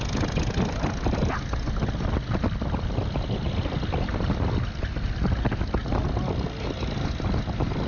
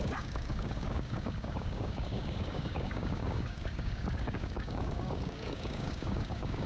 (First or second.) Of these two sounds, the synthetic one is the second